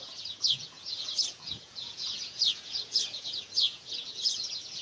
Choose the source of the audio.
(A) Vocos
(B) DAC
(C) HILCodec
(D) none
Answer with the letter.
A